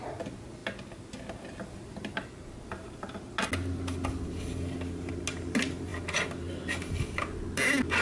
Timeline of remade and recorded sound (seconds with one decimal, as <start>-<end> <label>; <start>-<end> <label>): 0.0-8.0 recorded